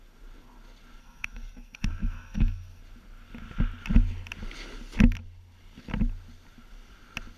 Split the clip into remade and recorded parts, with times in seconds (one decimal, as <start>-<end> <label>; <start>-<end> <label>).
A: 0.0-1.0 recorded; 1.0-2.8 remade; 2.8-7.4 recorded